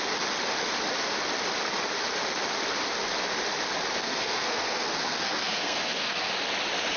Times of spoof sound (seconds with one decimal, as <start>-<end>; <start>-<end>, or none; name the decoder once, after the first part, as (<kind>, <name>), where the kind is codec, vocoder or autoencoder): 4.0-6.3 (codec, SNAC)

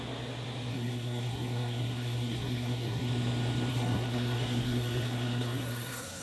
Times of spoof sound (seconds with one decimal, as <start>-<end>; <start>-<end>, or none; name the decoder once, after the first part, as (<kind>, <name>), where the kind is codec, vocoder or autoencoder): 0.7-3.1 (codec, SNAC); 3.7-6.2